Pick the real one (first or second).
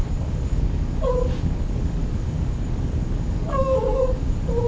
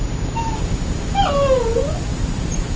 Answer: second